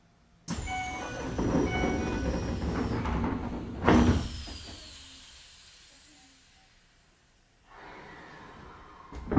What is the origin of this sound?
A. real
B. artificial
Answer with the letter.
A